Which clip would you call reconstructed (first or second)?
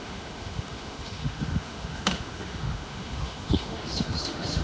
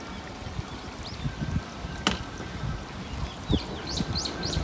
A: first